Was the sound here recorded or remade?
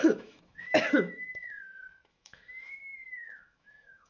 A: remade